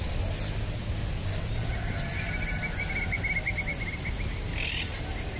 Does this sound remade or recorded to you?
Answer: recorded